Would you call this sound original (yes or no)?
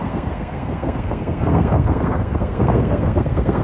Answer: no